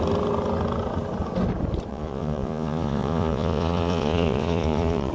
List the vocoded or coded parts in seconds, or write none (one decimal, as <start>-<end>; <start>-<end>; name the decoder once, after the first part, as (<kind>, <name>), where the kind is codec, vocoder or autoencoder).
1.9-5.1 (vocoder, Vocos)

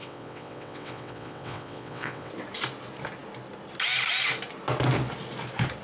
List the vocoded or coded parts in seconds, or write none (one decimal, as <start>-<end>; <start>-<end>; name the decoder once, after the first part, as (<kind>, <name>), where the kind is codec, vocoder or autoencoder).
0.0-2.3 (vocoder, WaveNeXt)

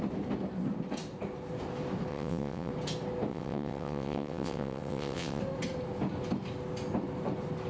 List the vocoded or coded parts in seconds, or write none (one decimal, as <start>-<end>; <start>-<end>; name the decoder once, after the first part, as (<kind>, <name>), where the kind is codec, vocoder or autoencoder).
2.1-2.7 (vocoder, WaveNeXt); 3.3-5.4

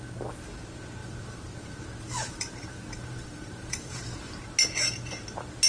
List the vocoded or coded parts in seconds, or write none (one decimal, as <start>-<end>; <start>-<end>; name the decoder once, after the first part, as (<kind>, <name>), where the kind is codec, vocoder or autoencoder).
1.0-4.4 (vocoder, BigVGAN v2)